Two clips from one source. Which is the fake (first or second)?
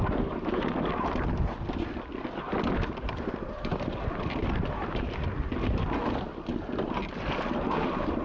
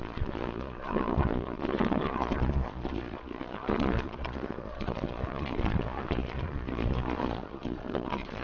second